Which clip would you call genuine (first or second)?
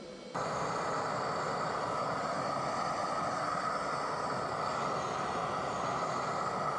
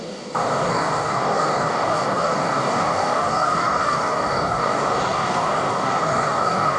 first